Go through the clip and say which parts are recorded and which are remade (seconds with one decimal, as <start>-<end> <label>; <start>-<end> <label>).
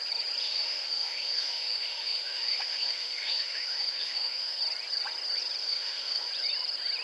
0.0-0.4 recorded; 0.4-4.6 remade; 4.6-5.6 recorded; 5.6-6.3 remade; 6.3-7.0 recorded